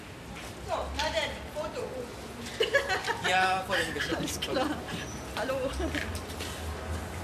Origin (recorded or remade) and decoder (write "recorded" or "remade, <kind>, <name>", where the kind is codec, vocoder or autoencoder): recorded